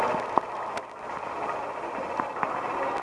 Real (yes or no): yes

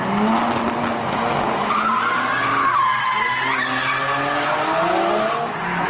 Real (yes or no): yes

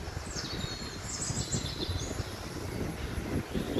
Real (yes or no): yes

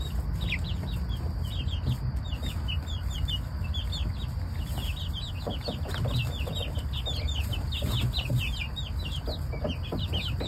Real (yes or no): yes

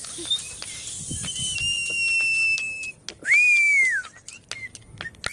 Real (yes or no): yes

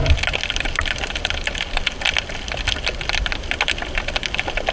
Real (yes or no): yes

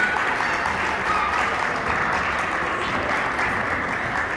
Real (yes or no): yes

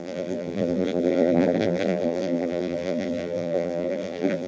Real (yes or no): no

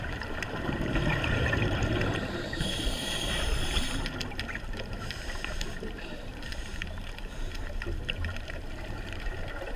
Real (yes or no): no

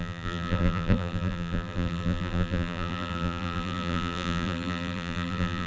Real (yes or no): no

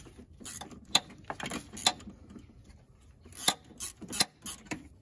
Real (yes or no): yes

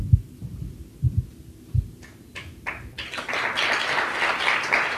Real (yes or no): yes